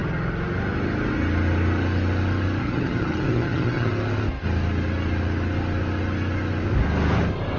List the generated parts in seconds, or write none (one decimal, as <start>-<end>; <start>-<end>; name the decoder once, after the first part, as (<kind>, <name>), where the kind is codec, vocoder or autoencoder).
2.6-3.9 (vocoder, HiFi-GAN)